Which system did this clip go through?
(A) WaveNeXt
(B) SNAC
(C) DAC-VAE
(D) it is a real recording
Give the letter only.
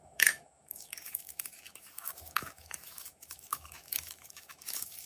C